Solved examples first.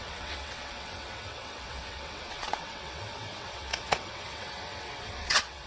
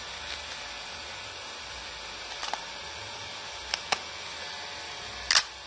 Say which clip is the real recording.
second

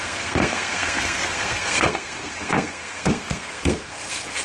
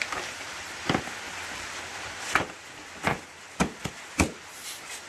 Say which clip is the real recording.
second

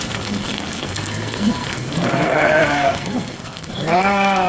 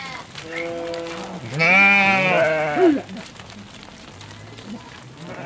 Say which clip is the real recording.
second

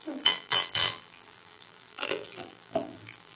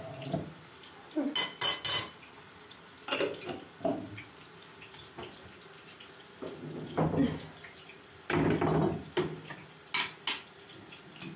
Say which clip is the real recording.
second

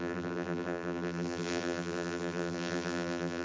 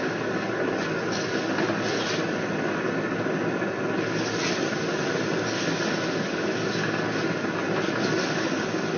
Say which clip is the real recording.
second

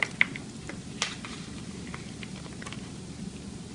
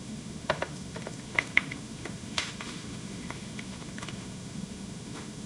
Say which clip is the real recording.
first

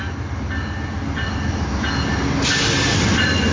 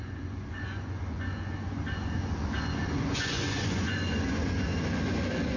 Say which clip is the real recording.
first